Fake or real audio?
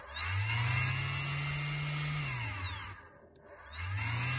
real